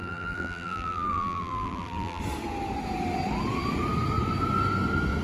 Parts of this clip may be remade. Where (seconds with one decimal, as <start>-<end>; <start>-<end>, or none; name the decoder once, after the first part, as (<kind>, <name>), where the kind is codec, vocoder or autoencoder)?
0.0-2.2 (vocoder, BigVGAN v2)